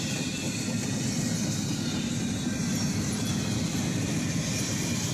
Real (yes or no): yes